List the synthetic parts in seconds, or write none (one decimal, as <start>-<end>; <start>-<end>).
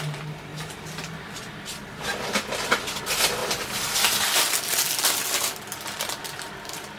none